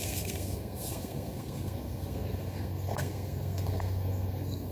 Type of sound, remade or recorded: remade